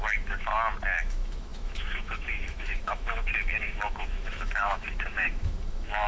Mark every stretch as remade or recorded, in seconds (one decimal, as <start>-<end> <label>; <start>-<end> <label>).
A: 0.0-0.5 remade; 0.5-1.0 recorded; 1.0-6.1 remade